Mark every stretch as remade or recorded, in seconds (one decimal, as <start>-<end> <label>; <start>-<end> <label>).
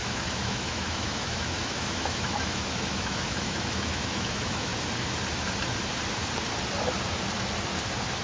0.0-4.7 remade; 4.7-8.2 recorded